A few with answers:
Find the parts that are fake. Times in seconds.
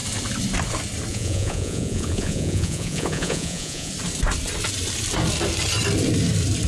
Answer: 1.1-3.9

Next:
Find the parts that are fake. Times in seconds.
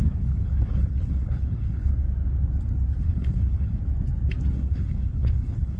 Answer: 0.0-1.9; 3.0-3.8; 4.5-5.8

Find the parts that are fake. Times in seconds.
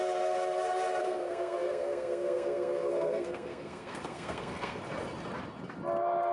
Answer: 1.0-4.8